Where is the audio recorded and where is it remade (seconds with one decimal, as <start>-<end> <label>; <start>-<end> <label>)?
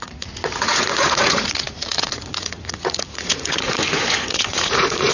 0.0-5.1 remade